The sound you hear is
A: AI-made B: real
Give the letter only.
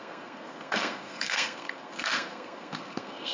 A